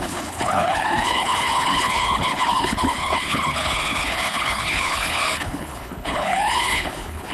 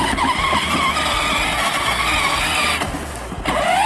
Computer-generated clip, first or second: first